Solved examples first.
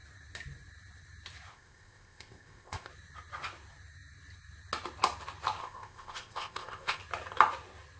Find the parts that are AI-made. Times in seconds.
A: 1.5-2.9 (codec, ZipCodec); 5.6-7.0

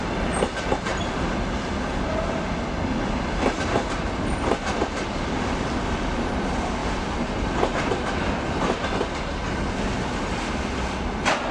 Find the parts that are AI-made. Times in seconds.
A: none